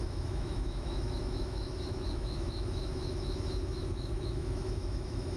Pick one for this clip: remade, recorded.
remade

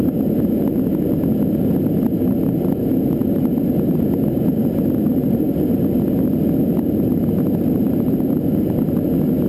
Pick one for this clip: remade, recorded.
recorded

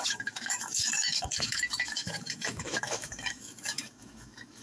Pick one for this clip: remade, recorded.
remade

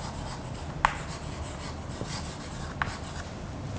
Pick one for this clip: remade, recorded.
recorded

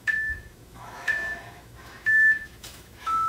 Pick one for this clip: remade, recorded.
remade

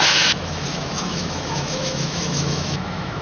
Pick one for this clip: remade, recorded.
remade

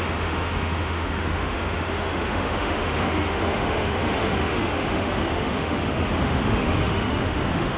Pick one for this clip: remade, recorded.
remade